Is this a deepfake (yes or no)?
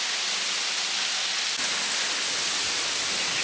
no